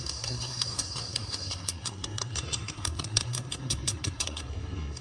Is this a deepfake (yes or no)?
yes